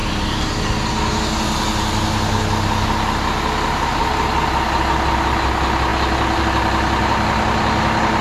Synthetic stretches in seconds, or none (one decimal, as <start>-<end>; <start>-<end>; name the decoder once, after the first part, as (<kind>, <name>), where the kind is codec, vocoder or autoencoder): none